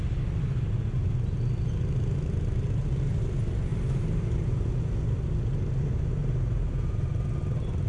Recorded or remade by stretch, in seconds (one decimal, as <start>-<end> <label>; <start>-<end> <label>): 0.0-3.7 recorded; 3.7-4.7 remade; 4.7-6.2 recorded; 6.2-7.1 remade; 7.1-7.9 recorded

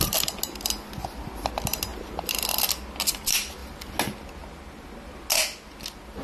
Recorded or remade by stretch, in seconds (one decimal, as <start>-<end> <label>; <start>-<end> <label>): 0.0-6.2 recorded

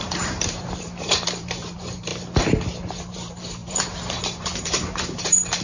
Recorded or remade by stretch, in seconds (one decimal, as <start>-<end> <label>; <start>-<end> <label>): 0.0-2.1 remade; 2.1-3.0 recorded; 3.0-5.6 remade

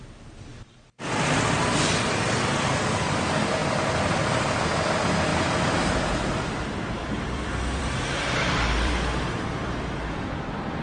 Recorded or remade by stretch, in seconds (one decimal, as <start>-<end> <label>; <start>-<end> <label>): 0.0-5.3 recorded; 5.3-8.9 remade; 8.9-10.8 recorded

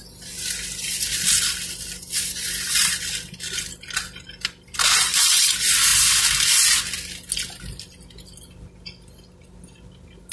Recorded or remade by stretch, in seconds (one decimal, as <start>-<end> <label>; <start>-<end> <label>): 0.0-10.3 recorded